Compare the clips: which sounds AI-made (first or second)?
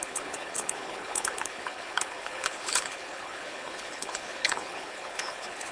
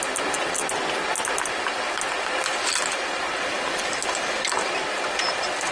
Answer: first